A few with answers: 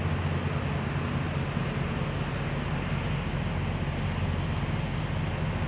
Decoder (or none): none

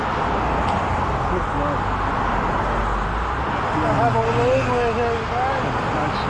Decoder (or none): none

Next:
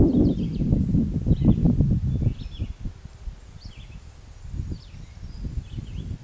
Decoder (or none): none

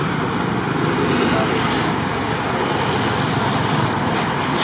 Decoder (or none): none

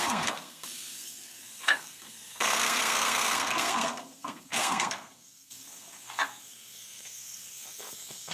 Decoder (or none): codec, SNAC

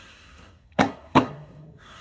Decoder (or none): codec, SNAC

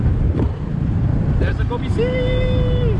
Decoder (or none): none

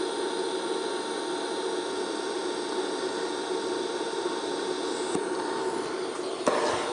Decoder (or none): none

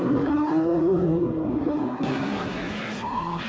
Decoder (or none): codec, SNAC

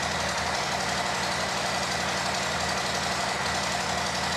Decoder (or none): none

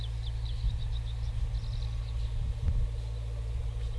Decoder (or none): none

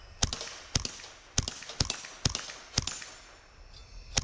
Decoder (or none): none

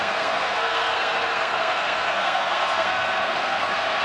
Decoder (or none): codec, SNAC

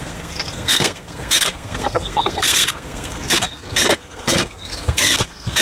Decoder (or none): codec, SNAC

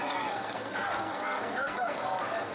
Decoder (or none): codec, SNAC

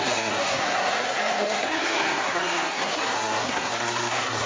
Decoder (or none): codec, SNAC